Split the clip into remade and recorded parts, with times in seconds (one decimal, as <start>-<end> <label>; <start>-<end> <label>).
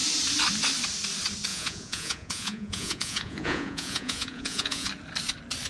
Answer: 0.0-1.5 recorded; 1.5-4.9 remade; 4.9-5.7 recorded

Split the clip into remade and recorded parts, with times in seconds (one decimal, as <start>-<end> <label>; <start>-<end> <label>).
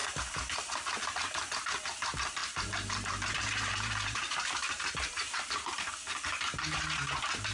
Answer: 0.0-2.4 recorded; 2.4-3.3 remade; 3.3-3.7 recorded; 3.7-5.9 remade; 5.9-7.5 recorded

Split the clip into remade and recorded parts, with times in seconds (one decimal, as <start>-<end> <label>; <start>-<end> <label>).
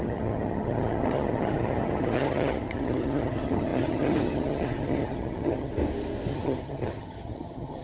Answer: 0.0-5.7 remade; 5.7-6.3 recorded; 6.3-7.8 remade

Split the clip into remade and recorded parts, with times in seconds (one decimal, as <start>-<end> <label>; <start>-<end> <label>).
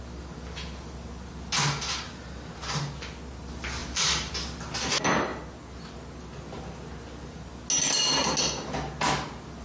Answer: 0.0-3.8 recorded; 3.8-4.3 remade; 4.3-9.6 recorded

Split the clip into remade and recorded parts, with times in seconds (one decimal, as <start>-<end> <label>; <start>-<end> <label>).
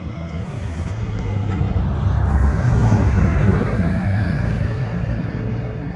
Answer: 0.0-1.8 remade; 1.8-2.3 recorded; 2.3-6.0 remade